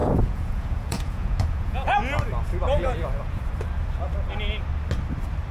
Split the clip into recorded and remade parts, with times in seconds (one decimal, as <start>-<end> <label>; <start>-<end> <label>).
0.0-2.0 remade; 2.0-5.5 recorded